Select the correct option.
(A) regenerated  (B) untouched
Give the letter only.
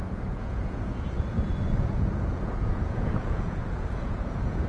A